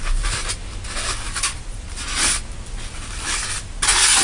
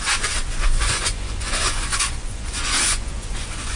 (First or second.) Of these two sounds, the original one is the first